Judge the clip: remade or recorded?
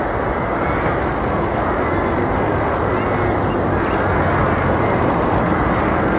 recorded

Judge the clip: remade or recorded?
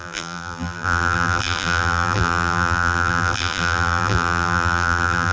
remade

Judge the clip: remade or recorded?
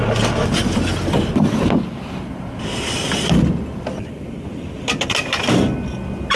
recorded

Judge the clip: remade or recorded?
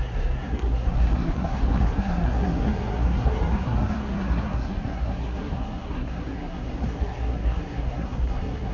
remade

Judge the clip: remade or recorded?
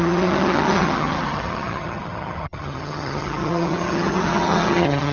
remade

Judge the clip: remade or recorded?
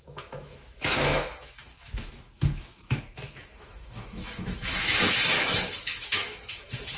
remade